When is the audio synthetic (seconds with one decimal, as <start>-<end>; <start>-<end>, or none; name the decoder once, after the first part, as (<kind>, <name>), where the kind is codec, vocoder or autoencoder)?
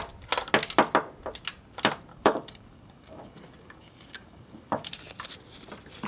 2.1-4.9 (codec, DAC)